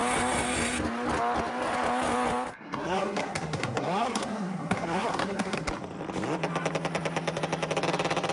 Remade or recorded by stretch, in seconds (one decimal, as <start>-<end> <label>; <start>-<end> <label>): 0.0-2.5 recorded; 2.5-5.7 remade; 5.7-8.3 recorded

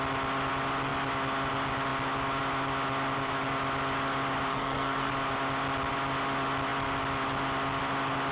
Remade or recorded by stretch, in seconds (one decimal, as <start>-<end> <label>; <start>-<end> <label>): 0.0-4.5 recorded; 4.5-5.1 remade; 5.1-8.3 recorded

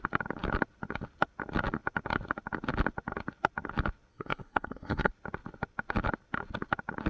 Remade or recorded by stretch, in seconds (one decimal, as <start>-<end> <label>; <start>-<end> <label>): 0.0-4.1 recorded; 4.1-5.1 remade; 5.1-7.1 recorded

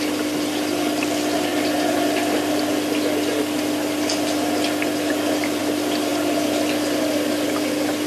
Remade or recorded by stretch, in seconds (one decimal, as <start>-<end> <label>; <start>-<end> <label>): 0.0-8.1 recorded

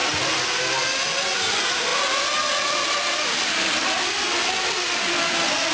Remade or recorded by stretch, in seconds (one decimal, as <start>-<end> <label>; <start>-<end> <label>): 0.0-5.7 recorded

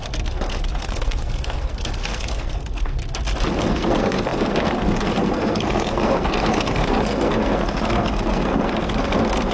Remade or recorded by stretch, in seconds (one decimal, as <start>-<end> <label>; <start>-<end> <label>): 0.0-3.0 remade; 3.0-3.6 recorded; 3.6-9.5 remade